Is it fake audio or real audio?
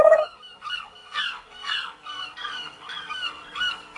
fake